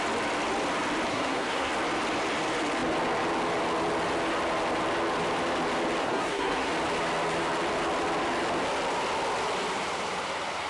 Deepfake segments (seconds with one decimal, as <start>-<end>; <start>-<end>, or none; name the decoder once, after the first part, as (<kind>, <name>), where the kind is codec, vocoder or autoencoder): 1.1-1.7 (codec, SNAC); 6.0-6.7